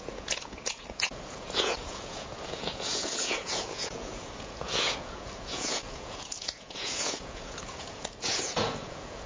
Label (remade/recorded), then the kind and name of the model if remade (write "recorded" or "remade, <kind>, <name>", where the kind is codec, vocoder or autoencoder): remade, vocoder, Vocos